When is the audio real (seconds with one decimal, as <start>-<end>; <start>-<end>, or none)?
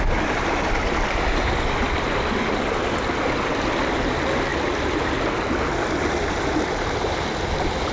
0.0-7.9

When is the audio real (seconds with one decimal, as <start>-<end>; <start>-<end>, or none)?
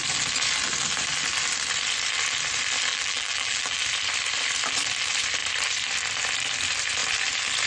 0.0-2.9; 3.8-7.7